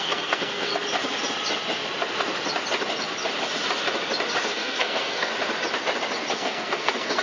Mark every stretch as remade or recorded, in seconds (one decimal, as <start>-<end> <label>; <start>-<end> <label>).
0.0-0.7 remade; 0.7-4.5 recorded; 4.5-5.3 remade; 5.3-6.3 recorded; 6.3-7.2 remade